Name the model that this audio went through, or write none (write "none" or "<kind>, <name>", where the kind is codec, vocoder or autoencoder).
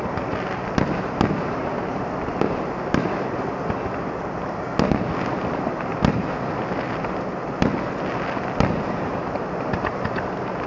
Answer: none